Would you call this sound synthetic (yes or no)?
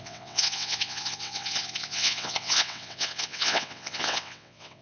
yes